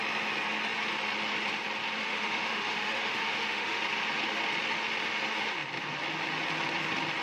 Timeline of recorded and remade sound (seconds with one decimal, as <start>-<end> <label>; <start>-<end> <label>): 0.0-2.0 recorded; 2.0-3.8 remade; 3.8-7.2 recorded